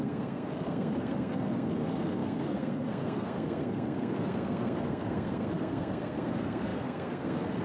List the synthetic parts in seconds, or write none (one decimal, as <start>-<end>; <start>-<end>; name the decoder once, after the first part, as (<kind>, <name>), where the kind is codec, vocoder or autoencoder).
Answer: 0.0-7.6 (codec, SNAC)